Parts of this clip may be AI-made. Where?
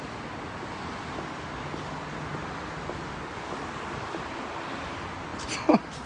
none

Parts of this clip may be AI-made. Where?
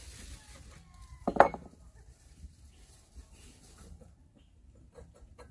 1.1-4.4 (vocoder, BigVGAN v2)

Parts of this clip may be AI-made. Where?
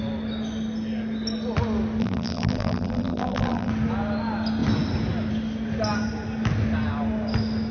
2.0-3.7 (vocoder, BigVGAN v2)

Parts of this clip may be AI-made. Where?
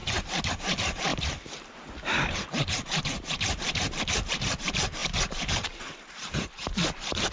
0.5-7.3 (vocoder, BigVGAN v2)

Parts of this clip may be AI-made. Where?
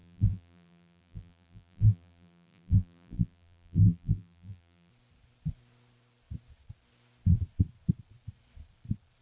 0.0-4.9 (vocoder, BigVGAN v2)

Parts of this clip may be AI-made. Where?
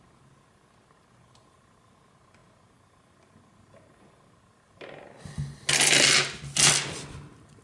none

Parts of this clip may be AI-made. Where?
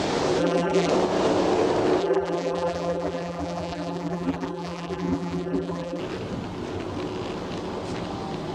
0.4-0.9 (vocoder, BigVGAN v2); 2.0-6.0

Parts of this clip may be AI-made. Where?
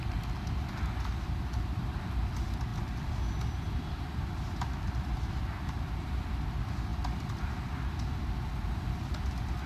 none